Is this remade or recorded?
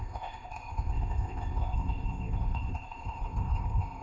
remade